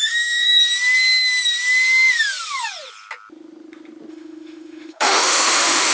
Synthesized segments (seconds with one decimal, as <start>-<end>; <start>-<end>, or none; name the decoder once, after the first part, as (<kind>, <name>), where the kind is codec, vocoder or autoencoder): 0.0-0.6 (autoencoder, DAC-VAE); 4.1-5.9